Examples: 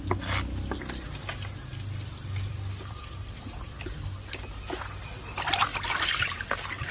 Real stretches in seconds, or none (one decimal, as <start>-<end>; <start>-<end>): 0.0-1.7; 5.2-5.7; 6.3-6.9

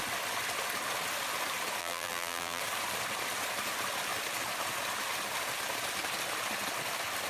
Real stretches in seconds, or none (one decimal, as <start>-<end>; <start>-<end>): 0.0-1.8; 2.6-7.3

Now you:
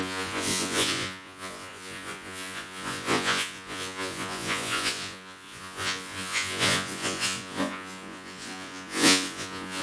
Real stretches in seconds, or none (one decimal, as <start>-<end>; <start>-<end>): none

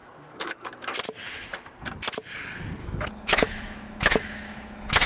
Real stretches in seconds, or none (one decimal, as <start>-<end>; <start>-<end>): 0.9-2.8

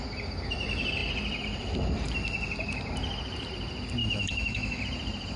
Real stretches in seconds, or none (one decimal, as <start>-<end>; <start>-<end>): 0.0-4.0; 4.8-5.4

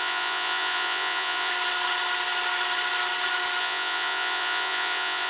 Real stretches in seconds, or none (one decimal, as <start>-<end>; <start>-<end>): 1.5-3.6

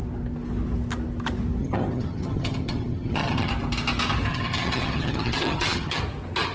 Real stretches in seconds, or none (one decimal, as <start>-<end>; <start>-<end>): 0.0-1.6; 3.5-4.3; 6.0-6.5

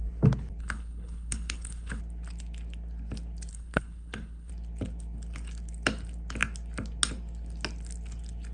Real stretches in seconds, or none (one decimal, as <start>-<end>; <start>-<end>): 0.0-0.6; 2.0-3.5; 4.5-8.5